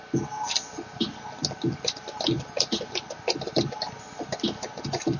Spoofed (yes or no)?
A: no